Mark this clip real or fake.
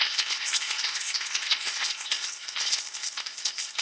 fake